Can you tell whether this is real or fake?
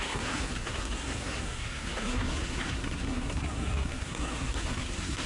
fake